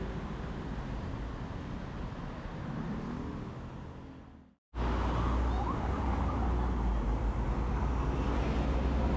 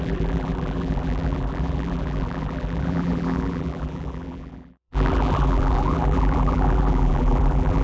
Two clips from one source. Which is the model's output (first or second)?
second